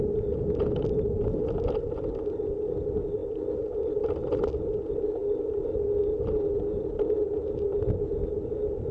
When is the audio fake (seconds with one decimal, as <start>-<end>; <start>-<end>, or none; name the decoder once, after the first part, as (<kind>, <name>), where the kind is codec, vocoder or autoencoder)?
none